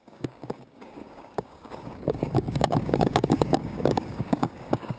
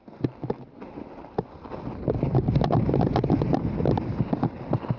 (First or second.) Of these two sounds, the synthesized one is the first